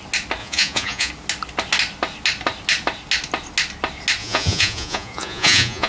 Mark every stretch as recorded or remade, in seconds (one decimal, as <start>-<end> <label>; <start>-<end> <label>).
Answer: 0.0-0.4 recorded; 0.4-1.1 remade; 1.1-4.2 recorded; 4.2-5.9 remade